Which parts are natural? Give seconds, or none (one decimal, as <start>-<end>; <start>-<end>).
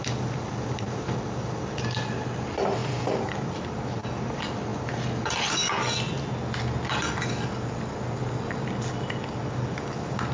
0.0-10.3